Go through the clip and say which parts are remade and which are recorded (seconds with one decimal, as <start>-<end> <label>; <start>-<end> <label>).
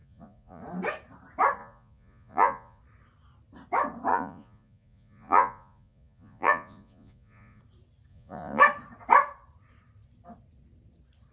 0.0-0.6 remade; 0.6-1.6 recorded; 1.6-2.8 remade; 2.8-4.1 recorded; 4.1-7.6 remade; 7.6-8.1 recorded; 8.1-8.6 remade; 8.6-11.3 recorded